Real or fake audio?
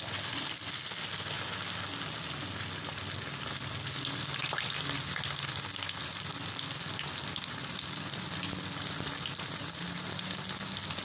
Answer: real